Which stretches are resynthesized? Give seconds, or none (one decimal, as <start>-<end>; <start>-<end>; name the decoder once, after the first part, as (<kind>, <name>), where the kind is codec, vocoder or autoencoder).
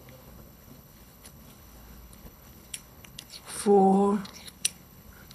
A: 0.0-5.3 (codec, HILCodec)